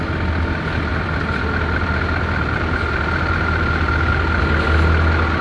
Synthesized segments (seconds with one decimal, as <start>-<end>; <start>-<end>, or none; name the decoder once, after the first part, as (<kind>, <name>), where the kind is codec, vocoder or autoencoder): 0.9-4.1 (vocoder, BigVGAN v2)